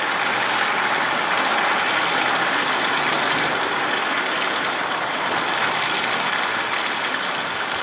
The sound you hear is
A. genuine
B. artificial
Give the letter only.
A